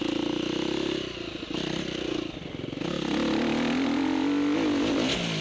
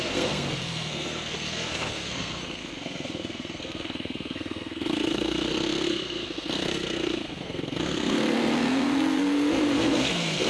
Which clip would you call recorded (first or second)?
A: first